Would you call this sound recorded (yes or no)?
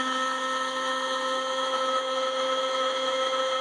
no